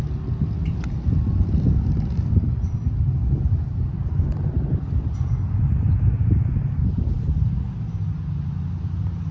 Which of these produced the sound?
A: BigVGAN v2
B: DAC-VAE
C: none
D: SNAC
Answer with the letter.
C